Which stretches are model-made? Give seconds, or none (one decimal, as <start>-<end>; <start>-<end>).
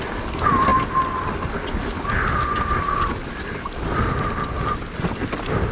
none